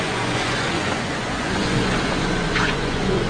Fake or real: fake